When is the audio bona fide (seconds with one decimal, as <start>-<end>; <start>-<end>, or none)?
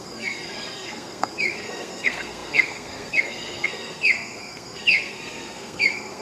none